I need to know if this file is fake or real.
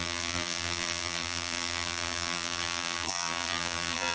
fake